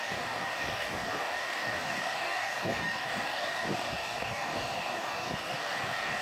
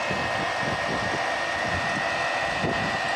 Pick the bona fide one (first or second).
second